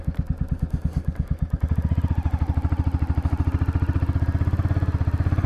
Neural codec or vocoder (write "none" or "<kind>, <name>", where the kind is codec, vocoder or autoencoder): none